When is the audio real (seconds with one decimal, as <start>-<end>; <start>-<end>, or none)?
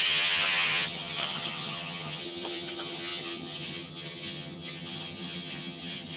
none